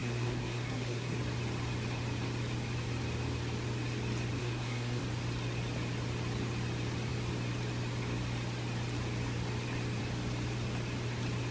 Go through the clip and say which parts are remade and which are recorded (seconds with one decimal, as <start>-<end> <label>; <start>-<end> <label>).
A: 0.0-1.2 remade; 1.2-4.4 recorded; 4.4-5.0 remade; 5.0-11.5 recorded